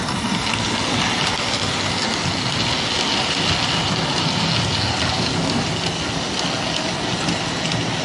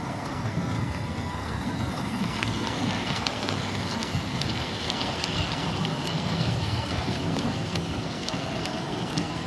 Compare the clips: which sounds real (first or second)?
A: first